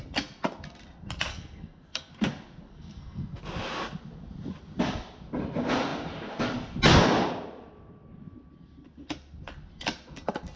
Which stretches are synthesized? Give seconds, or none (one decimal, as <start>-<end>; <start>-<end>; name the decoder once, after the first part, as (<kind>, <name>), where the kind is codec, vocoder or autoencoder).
1.3-2.1 (codec, SNAC); 2.7-3.4